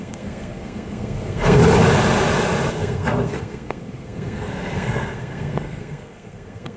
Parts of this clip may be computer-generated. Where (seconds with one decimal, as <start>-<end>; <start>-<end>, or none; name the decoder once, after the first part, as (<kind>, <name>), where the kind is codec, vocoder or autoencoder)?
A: 0.0-1.6 (codec, SNAC); 2.7-6.8